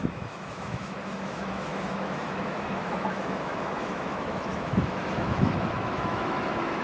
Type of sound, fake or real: fake